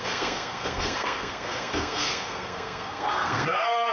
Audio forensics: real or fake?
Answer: fake